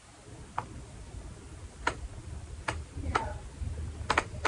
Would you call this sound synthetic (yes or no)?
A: no